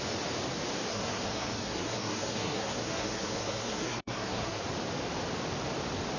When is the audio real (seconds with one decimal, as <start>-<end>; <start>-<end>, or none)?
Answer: 0.0-0.9; 4.6-6.2